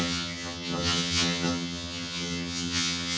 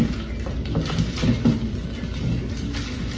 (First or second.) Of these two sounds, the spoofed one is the first